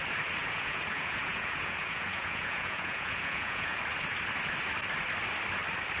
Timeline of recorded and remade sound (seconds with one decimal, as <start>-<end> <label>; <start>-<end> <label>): 0.0-0.4 recorded; 0.4-3.8 remade; 3.8-6.0 recorded